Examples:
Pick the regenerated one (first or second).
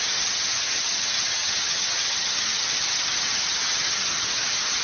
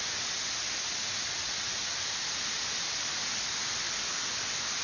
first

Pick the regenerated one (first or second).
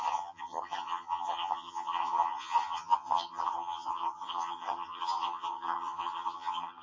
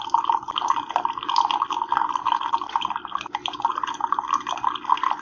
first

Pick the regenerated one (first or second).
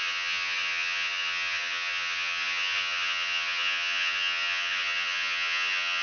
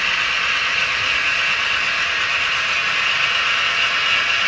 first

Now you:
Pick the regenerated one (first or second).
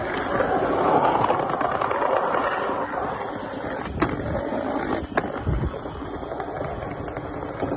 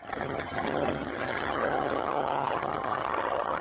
second